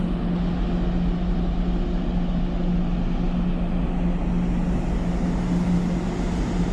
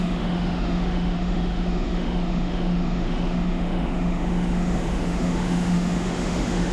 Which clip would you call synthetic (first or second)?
second